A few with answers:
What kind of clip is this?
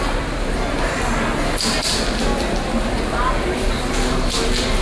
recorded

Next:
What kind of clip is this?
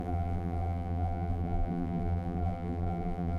remade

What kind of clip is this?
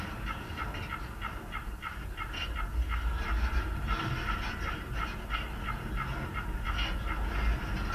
recorded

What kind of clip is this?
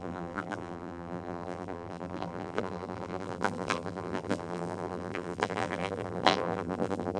remade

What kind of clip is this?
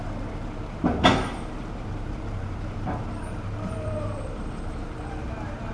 remade